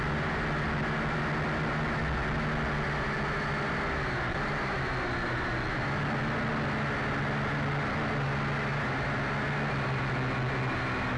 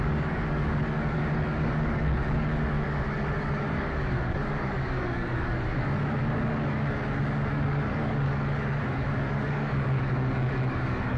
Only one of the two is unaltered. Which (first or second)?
first